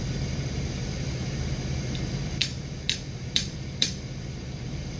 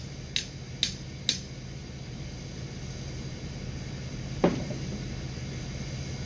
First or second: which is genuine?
second